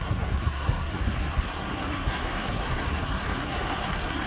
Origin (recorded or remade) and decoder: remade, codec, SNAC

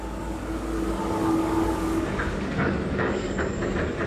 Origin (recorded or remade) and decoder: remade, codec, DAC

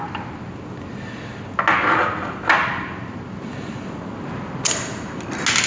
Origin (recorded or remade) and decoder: recorded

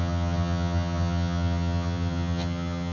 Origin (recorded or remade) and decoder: remade, vocoder, HiFi-GAN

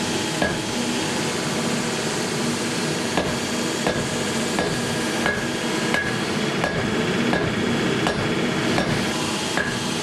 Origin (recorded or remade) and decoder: recorded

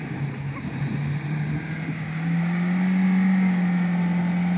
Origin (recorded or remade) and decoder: recorded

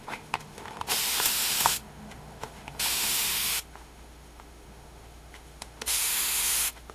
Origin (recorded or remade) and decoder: remade, autoencoder, DAC-VAE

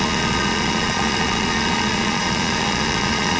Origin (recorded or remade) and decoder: remade, vocoder, Vocos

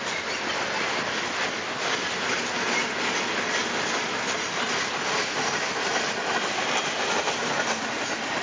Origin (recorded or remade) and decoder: recorded